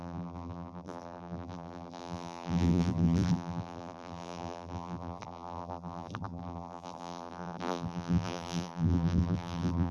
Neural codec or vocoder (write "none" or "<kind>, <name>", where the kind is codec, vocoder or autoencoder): vocoder, BigVGAN v2